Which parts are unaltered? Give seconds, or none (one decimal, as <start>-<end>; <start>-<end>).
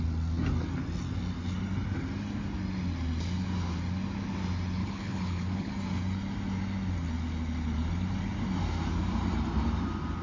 0.0-4.8; 5.7-10.2